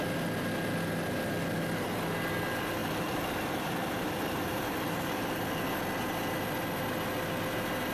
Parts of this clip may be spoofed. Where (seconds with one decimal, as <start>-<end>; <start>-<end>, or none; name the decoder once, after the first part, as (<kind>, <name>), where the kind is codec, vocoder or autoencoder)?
2.8-5.5 (vocoder, BigVGAN v2)